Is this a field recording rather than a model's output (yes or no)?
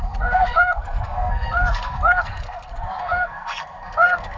no